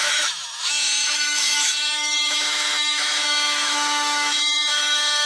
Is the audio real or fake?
fake